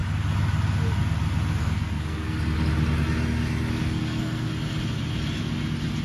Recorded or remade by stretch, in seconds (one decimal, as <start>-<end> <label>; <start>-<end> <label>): 0.0-1.6 recorded; 1.6-2.4 remade; 2.4-3.8 recorded; 3.8-4.5 remade; 4.5-6.0 recorded